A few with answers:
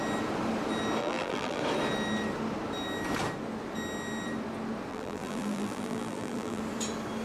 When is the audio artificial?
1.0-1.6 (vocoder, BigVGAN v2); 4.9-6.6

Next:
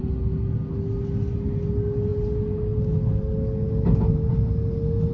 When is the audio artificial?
none